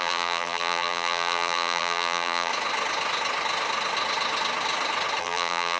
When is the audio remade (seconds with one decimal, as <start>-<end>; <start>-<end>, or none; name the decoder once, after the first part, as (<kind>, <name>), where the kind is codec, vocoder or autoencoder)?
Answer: 0.0-2.5 (vocoder, BigVGAN v2); 5.2-5.8